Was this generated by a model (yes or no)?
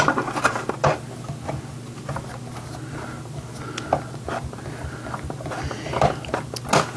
no